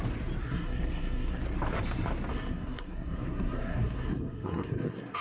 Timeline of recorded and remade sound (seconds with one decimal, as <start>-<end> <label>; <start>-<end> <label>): 0.0-0.4 recorded; 0.4-1.4 remade; 1.4-2.3 recorded; 2.3-5.2 remade

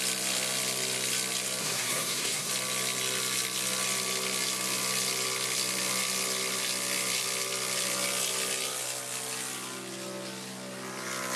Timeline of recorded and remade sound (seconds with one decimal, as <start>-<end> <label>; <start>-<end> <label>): 0.0-1.6 recorded; 1.6-2.5 remade; 2.5-11.4 recorded

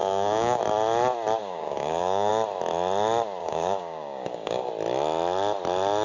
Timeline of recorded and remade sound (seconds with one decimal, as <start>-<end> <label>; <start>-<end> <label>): 0.0-0.6 remade; 0.6-1.4 recorded; 1.4-2.3 remade; 2.3-3.4 recorded; 3.4-4.7 remade; 4.7-6.0 recorded

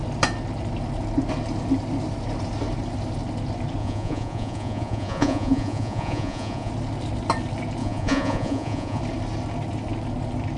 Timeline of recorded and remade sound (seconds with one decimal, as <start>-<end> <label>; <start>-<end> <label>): 0.0-3.8 recorded; 3.8-6.7 remade; 6.7-7.8 recorded; 7.8-9.0 remade; 9.0-10.6 recorded

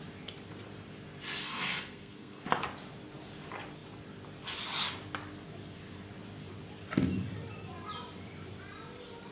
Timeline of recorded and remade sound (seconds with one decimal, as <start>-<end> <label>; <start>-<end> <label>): 0.0-1.4 recorded; 1.4-2.4 remade; 2.4-9.3 recorded